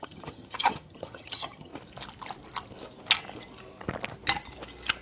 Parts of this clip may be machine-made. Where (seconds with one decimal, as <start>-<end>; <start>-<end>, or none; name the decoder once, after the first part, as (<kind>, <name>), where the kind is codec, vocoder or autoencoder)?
0.0-1.7 (vocoder, HiFi-GAN)